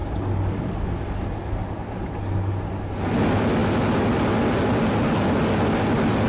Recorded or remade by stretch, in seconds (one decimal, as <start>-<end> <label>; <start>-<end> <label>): 0.0-6.3 recorded